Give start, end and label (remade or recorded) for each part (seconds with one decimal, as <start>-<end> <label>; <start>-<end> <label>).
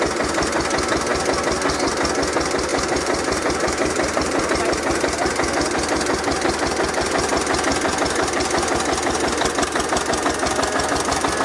0.0-2.7 recorded; 2.7-4.5 remade; 4.5-11.4 recorded